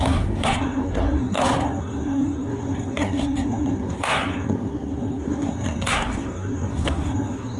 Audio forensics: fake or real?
fake